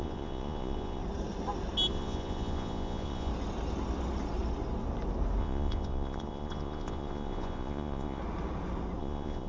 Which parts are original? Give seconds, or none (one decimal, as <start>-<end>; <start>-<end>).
1.0-1.9; 3.3-5.4; 8.2-9.0